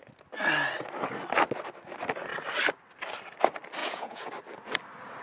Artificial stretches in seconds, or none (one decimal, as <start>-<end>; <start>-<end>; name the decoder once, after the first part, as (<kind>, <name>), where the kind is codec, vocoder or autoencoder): 3.8-4.3 (vocoder, Vocos)